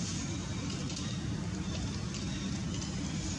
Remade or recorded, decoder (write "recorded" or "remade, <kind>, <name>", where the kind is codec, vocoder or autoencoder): recorded